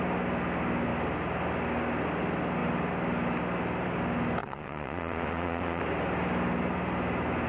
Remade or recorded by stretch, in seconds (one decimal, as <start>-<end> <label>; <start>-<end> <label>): 0.0-4.4 recorded; 4.4-5.8 remade; 5.8-7.5 recorded

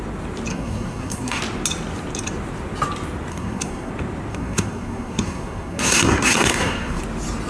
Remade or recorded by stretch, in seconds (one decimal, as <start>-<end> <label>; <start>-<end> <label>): 0.0-0.5 recorded; 0.5-1.4 remade; 1.4-3.3 recorded; 3.3-3.9 remade; 3.9-4.3 recorded; 4.3-7.0 remade; 7.0-7.5 recorded

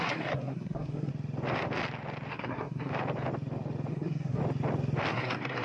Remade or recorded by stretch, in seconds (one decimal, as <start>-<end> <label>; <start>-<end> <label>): 0.0-1.1 remade; 1.1-2.3 recorded; 2.3-2.9 remade; 2.9-3.9 recorded; 3.9-4.4 remade; 4.4-5.1 recorded; 5.1-5.6 remade

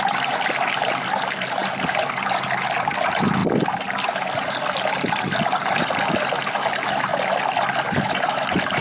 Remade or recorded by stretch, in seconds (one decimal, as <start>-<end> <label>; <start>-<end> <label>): 0.0-7.1 recorded; 7.1-8.8 remade

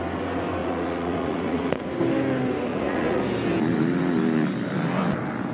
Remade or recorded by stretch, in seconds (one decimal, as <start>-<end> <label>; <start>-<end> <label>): 0.0-0.6 recorded; 0.6-1.8 remade; 1.8-2.7 recorded; 2.7-3.2 remade; 3.2-5.5 recorded

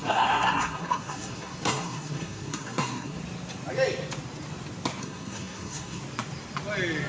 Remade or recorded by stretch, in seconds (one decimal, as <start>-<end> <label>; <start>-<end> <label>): 0.0-3.2 remade; 3.2-5.0 recorded; 5.0-6.0 remade; 6.0-7.1 recorded

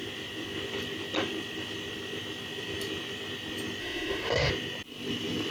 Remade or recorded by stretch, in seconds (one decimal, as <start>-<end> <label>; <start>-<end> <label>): 0.0-3.8 recorded; 3.8-4.5 remade; 4.5-5.5 recorded